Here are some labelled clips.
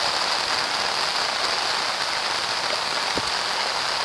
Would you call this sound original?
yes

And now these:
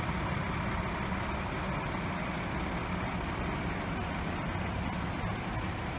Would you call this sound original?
yes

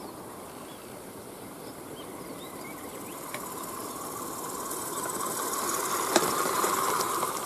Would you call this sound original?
yes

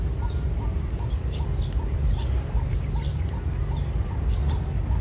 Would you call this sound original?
yes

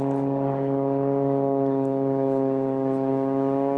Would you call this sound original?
no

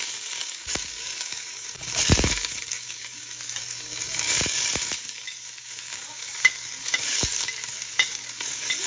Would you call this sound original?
no